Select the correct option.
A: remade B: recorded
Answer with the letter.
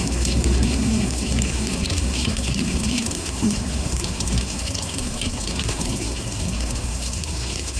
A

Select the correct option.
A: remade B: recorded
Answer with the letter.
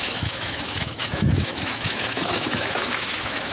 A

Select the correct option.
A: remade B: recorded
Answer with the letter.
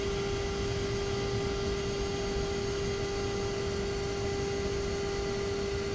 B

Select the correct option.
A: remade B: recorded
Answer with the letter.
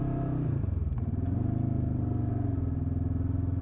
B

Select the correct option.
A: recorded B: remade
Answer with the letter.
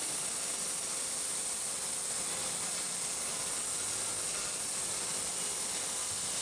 A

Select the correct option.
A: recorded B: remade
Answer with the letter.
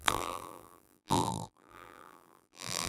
B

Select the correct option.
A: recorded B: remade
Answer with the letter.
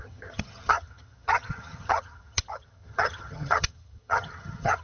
B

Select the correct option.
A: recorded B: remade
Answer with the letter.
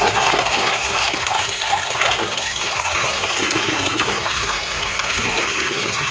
B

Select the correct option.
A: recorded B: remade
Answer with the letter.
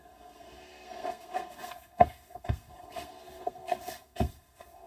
B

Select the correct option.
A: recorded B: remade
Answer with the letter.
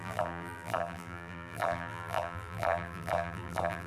B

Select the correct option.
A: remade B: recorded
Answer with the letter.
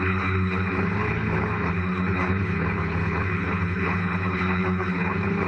A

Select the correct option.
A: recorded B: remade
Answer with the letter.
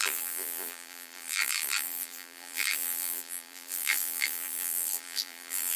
B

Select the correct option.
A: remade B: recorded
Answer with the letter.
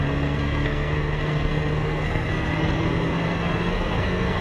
A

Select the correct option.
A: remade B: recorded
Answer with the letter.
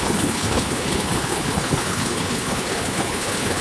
A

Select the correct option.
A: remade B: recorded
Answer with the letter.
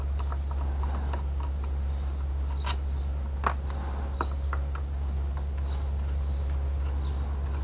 B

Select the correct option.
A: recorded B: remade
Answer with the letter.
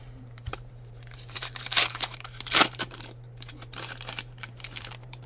B